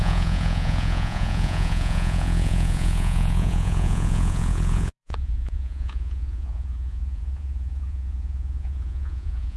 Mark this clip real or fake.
fake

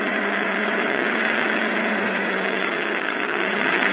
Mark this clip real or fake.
fake